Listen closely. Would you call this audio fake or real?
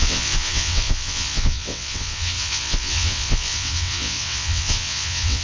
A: fake